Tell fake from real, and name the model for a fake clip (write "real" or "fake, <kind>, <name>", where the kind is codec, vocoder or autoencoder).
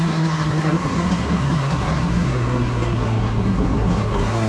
fake, codec, SNAC